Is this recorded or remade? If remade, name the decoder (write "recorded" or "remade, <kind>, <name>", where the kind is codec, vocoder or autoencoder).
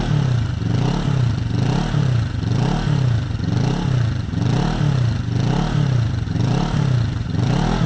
recorded